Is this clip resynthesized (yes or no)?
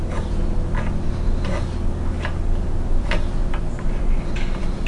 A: no